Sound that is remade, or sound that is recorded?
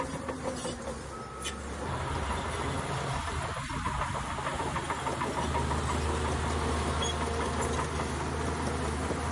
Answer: recorded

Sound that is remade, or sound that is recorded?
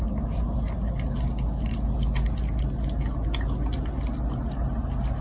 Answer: recorded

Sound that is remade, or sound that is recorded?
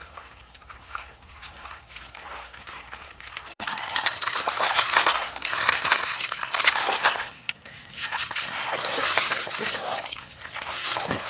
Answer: remade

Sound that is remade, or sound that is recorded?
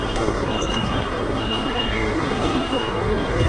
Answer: remade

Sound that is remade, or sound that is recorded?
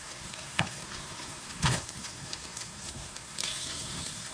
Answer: remade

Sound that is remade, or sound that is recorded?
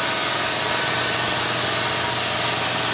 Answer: recorded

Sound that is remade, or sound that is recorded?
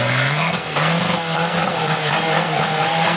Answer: remade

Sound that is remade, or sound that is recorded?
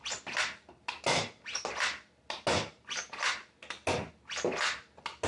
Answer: recorded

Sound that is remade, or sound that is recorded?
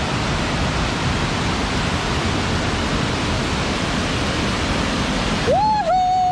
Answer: recorded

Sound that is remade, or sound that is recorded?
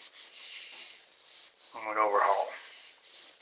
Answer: recorded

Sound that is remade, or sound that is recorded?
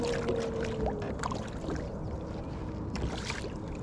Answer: recorded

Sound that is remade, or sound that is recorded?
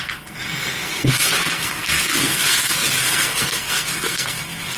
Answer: remade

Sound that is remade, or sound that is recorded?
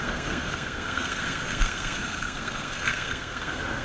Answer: remade